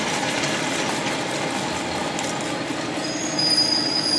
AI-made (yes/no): no